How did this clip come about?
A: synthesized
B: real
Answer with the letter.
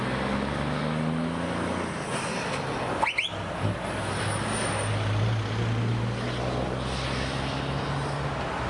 B